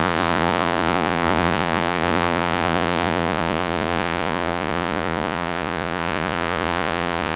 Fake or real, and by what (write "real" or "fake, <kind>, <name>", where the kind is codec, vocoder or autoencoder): fake, vocoder, Vocos